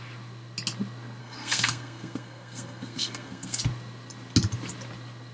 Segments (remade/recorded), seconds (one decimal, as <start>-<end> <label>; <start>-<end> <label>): 0.0-1.2 recorded; 1.2-3.6 remade; 3.6-5.3 recorded